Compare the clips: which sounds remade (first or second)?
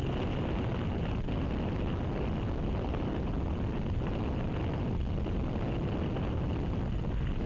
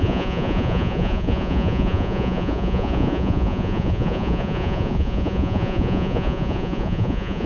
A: second